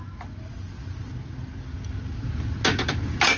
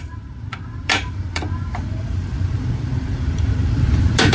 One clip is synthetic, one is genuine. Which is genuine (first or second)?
first